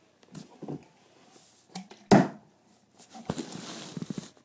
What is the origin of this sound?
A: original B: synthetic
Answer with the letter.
A